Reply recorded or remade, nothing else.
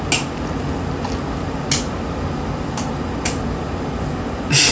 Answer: recorded